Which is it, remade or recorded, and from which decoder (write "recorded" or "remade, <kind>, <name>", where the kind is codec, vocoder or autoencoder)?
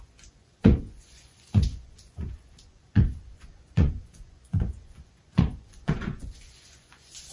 remade, vocoder, Vocos